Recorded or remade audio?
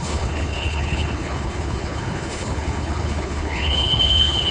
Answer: remade